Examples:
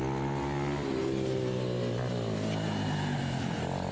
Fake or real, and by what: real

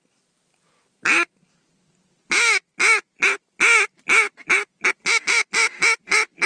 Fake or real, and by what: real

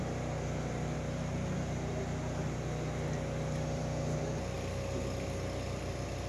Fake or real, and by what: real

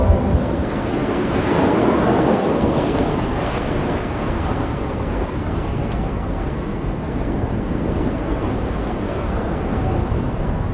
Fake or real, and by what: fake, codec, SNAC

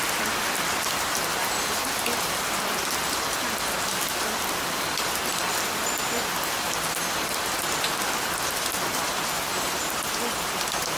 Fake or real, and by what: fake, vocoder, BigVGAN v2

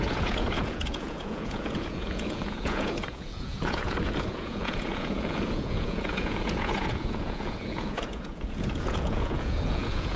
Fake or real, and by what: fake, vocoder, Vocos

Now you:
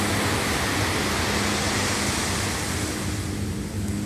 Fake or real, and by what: real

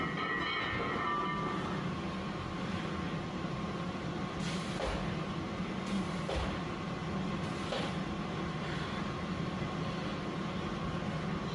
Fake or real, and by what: real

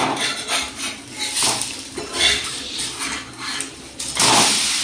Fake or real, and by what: real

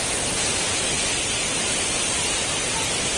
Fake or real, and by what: real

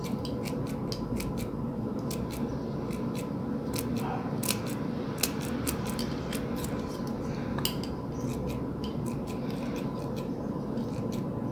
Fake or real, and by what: real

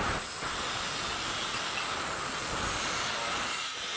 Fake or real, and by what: real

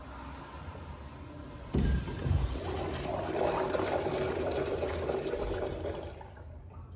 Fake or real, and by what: real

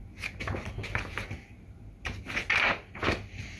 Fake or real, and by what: real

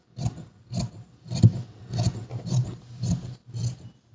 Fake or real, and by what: real